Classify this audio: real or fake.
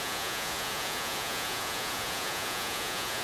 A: fake